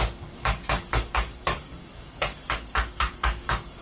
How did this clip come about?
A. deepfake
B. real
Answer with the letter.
A